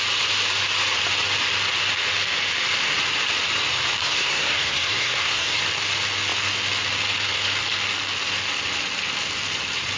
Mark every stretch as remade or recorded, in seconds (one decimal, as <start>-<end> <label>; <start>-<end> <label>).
0.0-4.0 recorded; 4.0-5.6 remade; 5.6-10.0 recorded